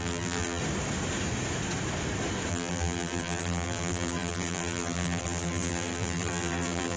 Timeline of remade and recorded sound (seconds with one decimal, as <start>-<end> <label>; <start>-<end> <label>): 0.0-0.6 remade; 0.6-2.5 recorded; 2.5-7.0 remade